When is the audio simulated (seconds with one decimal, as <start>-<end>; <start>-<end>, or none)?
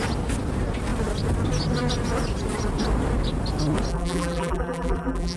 3.9-5.4